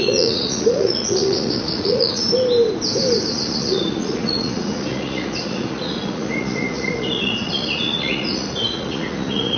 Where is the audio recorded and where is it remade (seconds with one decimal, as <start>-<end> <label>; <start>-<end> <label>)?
0.0-2.2 remade; 2.2-3.3 recorded; 3.3-9.6 remade